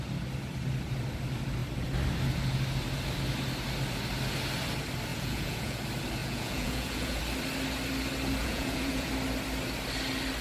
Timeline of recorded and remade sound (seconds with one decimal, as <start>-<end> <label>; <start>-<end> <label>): 0.0-5.1 recorded; 5.1-5.8 remade; 5.8-6.2 recorded; 6.2-7.2 remade; 7.2-8.4 recorded; 8.4-9.1 remade; 9.1-10.4 recorded